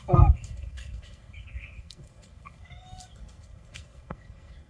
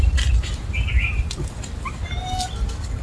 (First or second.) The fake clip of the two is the first